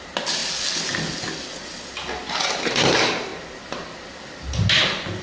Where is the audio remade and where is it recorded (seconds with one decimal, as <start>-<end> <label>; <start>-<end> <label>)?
0.0-5.2 recorded